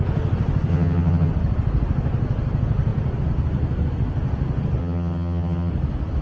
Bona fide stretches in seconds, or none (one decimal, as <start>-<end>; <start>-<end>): 0.0-0.7; 1.3-4.8; 5.7-6.2